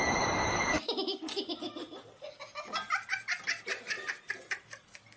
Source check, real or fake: real